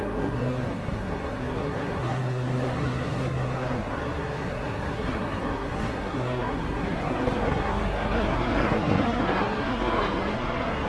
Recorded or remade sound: remade